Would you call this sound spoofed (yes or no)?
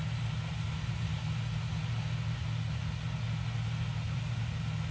no